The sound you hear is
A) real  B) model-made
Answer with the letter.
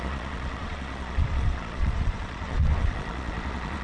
B